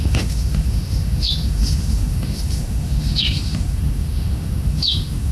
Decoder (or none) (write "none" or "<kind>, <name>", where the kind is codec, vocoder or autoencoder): autoencoder, DAC-VAE